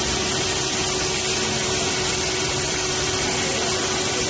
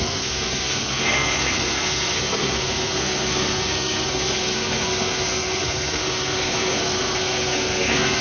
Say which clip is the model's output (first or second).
second